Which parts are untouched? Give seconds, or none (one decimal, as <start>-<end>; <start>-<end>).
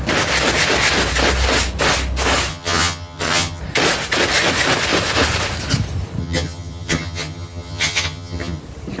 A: 0.0-2.5; 3.6-6.2; 8.6-9.0